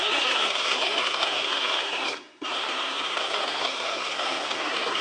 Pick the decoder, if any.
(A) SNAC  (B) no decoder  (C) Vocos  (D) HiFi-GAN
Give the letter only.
A